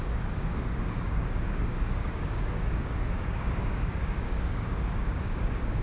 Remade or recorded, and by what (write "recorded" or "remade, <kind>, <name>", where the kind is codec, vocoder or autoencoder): remade, codec, DAC